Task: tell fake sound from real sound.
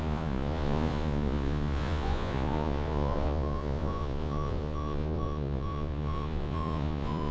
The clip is fake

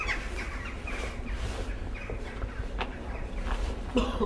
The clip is real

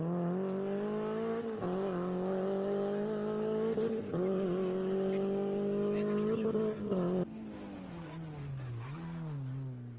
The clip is real